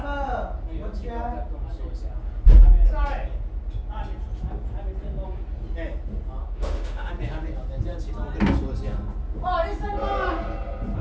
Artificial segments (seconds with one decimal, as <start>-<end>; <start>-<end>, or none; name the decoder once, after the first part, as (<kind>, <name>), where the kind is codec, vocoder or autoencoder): 6.4-7.1 (autoencoder, DAC-VAE)